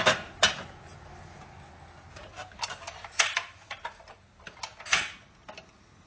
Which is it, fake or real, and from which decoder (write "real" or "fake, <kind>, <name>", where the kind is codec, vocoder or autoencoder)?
real